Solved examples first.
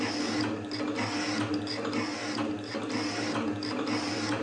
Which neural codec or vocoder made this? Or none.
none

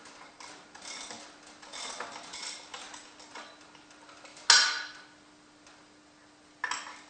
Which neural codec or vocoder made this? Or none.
none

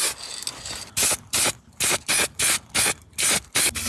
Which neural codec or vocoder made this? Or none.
none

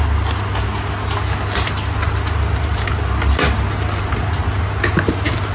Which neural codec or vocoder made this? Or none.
none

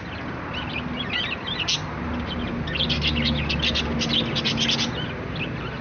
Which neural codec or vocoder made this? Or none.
none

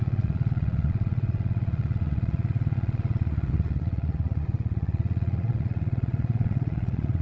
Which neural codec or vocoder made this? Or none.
vocoder, Vocos